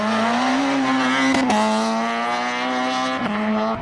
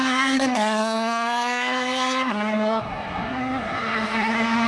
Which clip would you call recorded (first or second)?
first